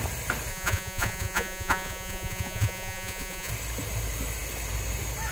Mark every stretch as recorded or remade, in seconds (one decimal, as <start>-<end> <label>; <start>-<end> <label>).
0.0-0.5 recorded; 0.5-3.5 remade; 3.5-5.3 recorded